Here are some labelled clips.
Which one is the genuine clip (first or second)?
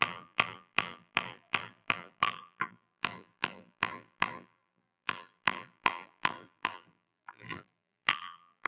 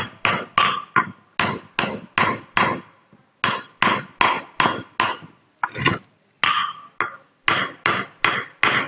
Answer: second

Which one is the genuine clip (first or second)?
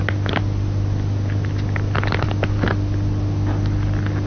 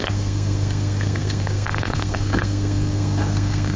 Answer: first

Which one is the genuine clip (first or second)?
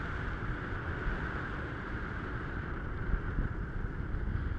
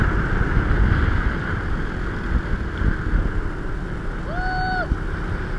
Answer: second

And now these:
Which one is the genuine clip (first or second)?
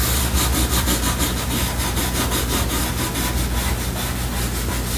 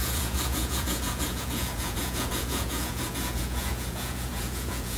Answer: first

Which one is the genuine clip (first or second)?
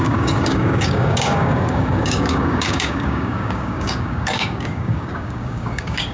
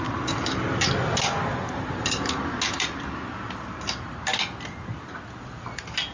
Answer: second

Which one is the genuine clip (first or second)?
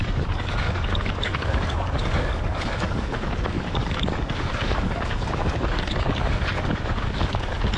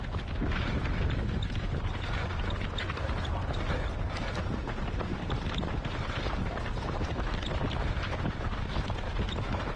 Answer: second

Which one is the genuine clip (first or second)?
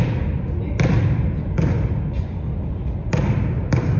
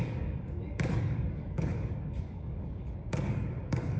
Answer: first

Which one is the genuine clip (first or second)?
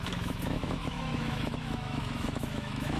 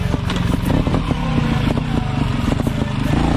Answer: second